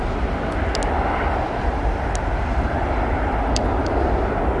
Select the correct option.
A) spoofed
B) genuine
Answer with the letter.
B